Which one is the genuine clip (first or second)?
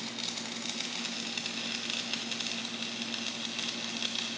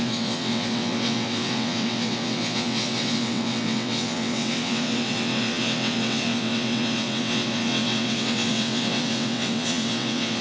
first